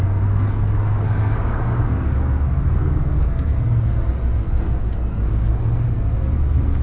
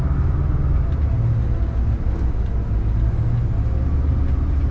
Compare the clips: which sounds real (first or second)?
second